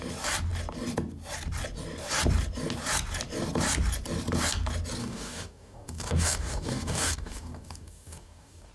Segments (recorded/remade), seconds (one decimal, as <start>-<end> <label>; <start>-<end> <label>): 0.0-5.0 recorded; 5.0-8.7 remade